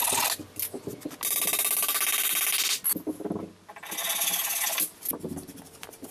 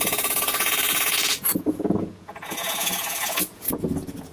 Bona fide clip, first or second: first